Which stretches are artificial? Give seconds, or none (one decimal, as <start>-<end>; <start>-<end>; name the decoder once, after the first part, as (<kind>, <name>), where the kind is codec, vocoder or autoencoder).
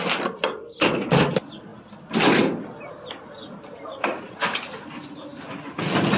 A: none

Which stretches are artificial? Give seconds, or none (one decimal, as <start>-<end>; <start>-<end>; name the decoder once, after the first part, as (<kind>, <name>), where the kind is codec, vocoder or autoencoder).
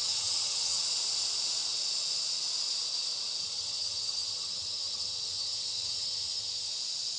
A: 0.0-0.8 (vocoder, HiFi-GAN); 3.4-6.7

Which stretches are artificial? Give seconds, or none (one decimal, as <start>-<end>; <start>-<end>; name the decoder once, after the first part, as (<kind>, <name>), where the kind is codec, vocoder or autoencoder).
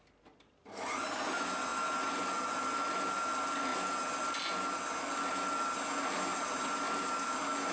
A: none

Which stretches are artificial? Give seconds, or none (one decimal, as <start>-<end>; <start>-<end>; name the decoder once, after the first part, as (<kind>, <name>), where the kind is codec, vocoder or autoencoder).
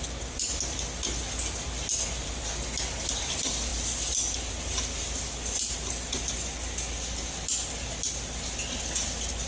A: none